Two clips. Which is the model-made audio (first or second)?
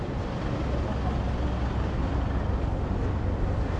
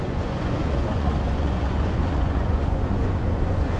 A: second